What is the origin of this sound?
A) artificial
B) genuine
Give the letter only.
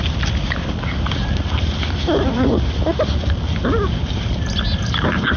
B